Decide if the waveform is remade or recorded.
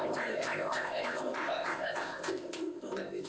remade